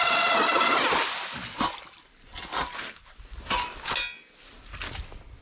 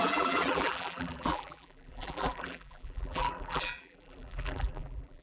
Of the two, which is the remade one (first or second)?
second